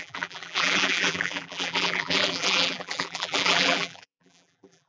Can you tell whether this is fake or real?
fake